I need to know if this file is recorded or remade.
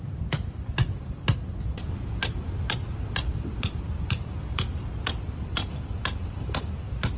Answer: remade